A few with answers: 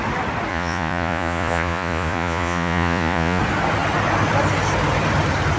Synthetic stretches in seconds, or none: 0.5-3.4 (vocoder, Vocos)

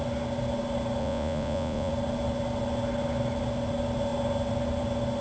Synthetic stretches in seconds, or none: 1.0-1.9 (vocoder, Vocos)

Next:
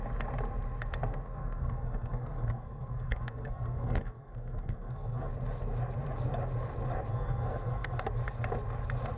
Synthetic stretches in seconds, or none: 1.1-5.3 (codec, SNAC); 7.1-8.0